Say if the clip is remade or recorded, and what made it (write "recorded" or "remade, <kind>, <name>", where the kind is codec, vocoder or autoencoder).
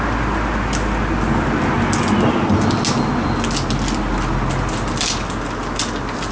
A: recorded